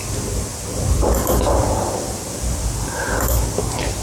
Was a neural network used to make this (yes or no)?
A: no